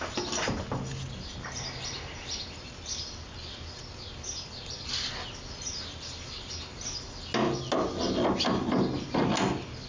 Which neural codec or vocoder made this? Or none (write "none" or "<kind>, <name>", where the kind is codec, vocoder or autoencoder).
none